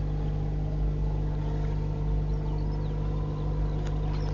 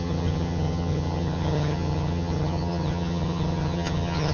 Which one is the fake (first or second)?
second